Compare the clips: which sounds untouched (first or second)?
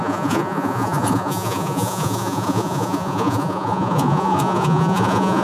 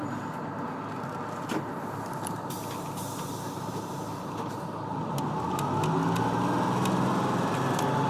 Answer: second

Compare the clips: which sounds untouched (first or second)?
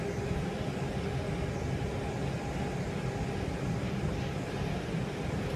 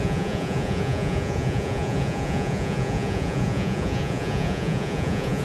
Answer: first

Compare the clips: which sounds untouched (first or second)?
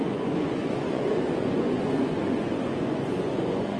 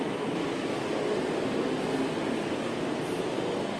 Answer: second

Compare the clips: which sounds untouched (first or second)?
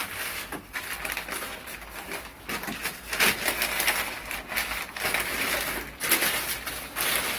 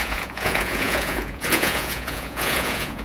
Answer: first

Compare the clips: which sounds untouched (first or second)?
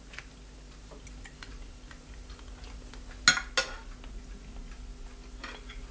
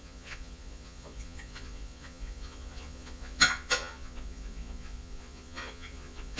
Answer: first